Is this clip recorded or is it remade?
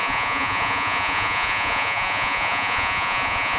remade